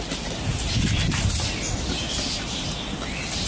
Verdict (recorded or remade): recorded